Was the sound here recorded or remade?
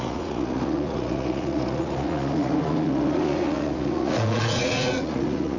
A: remade